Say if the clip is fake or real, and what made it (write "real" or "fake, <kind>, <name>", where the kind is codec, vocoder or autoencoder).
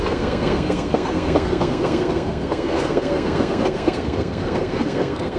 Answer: fake, codec, SNAC